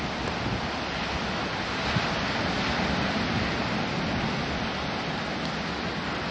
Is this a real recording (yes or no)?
yes